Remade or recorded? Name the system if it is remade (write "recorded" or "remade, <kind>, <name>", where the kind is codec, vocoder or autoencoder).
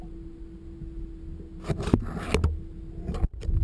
recorded